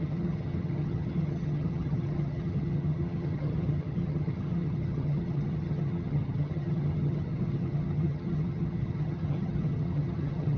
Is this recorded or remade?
remade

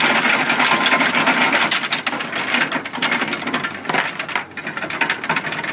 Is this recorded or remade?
recorded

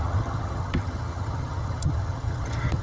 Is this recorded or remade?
remade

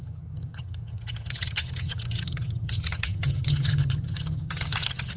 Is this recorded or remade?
remade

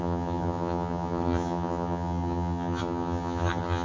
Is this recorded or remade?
remade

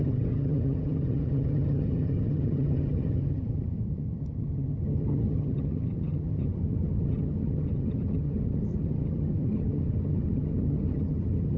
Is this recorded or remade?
remade